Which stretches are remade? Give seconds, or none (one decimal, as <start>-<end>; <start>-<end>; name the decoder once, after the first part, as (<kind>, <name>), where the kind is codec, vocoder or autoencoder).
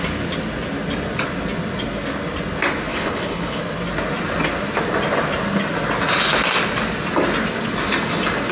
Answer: 2.9-3.6 (codec, HILCodec)